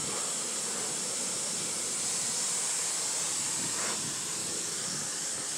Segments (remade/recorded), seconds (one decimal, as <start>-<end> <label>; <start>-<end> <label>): 0.0-4.4 recorded; 4.4-5.6 remade